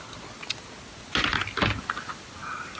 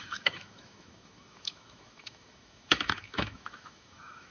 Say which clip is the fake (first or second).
second